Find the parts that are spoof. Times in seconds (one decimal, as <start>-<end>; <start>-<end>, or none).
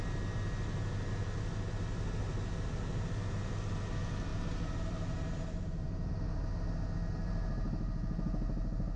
4.3-6.1